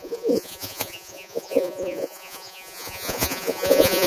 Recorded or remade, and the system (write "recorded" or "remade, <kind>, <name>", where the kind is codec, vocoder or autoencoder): remade, vocoder, Vocos